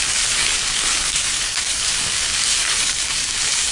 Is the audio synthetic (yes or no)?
yes